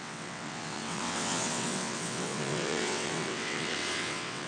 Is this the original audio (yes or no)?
no